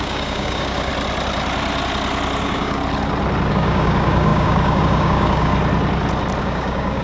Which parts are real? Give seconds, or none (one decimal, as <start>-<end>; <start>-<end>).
0.9-2.4; 2.8-3.5; 5.5-6.4